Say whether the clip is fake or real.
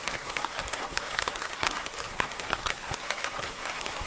fake